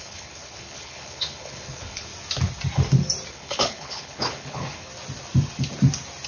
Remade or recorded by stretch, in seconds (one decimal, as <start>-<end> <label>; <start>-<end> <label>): 0.0-2.1 remade; 2.1-3.3 recorded; 3.3-4.9 remade; 4.9-6.3 recorded